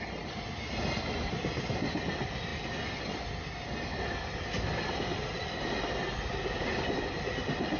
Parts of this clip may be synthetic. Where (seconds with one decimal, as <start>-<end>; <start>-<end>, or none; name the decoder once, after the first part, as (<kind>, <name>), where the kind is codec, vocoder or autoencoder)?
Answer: none